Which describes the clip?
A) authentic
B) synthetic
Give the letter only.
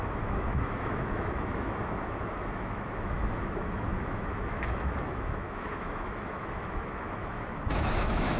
B